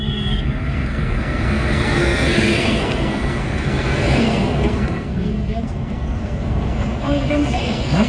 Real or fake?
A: fake